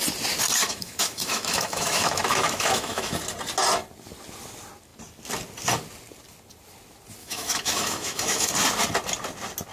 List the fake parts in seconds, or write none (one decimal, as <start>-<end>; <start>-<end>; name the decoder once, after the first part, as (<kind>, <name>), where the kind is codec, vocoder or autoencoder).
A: 0.6-3.2 (autoencoder, DAC-VAE); 7.2-8.5